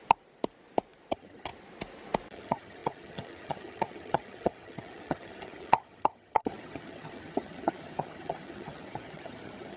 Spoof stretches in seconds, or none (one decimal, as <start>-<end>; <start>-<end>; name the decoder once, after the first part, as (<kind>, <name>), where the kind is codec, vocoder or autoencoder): 1.1-1.5 (vocoder, HiFi-GAN); 2.3-9.8